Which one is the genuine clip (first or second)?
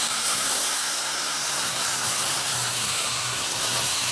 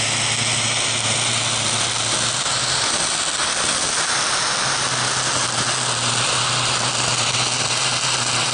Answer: second